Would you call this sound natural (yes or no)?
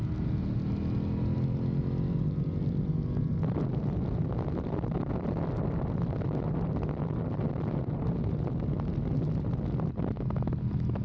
yes